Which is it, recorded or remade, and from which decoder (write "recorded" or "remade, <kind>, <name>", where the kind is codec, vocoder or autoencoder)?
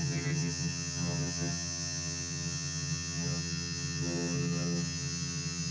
remade, vocoder, HiFi-GAN